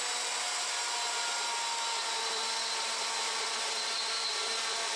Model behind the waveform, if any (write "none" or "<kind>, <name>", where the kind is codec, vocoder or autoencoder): none